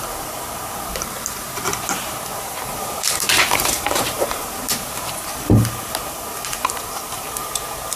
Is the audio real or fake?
fake